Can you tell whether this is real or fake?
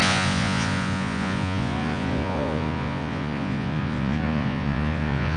fake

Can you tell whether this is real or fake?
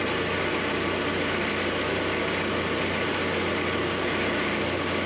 real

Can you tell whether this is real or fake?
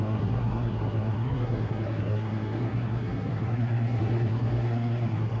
fake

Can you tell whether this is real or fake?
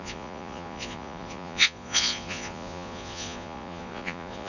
fake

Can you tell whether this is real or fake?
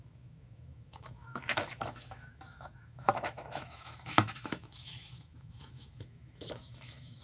fake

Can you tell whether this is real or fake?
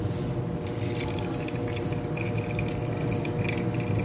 real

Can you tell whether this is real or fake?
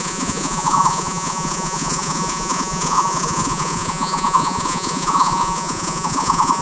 fake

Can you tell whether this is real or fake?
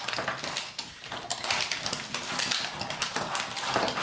real